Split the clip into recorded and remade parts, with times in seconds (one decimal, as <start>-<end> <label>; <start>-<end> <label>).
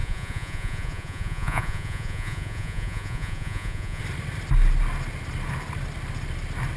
0.0-4.0 remade; 4.0-6.8 recorded